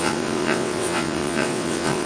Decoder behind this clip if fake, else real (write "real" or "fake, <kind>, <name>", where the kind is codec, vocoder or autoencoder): fake, vocoder, WaveNeXt